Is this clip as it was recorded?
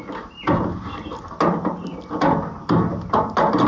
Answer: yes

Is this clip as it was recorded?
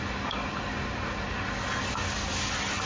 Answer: yes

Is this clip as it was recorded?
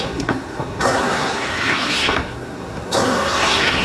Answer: no